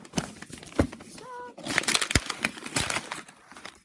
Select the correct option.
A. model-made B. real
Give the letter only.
B